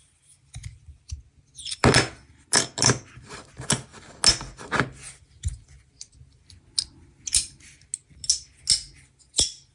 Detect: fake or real real